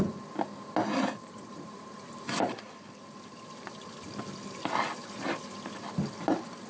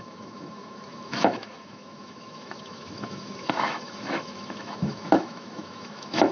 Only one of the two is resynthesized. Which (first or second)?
second